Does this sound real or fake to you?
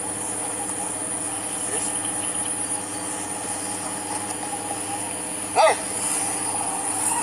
real